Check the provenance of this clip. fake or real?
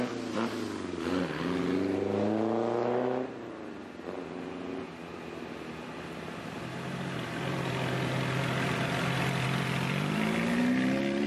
real